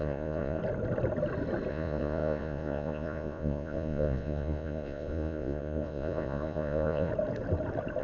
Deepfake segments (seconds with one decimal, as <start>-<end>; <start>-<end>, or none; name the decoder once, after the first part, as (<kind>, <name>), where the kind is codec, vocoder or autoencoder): 0.0-0.6 (vocoder, Vocos); 1.7-7.1